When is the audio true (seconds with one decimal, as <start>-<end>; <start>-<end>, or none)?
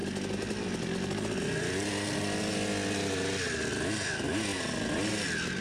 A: 0.0-5.6